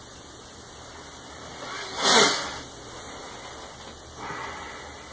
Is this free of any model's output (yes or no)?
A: yes